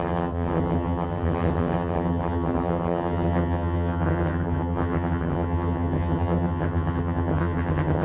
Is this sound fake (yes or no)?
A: yes